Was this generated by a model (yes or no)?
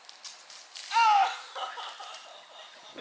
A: no